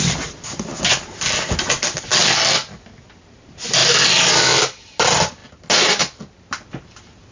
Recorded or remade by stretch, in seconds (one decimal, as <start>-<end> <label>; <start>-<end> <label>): 0.0-7.3 recorded